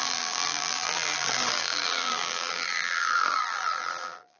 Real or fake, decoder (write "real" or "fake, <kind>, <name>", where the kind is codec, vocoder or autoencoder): fake, vocoder, BigVGAN v2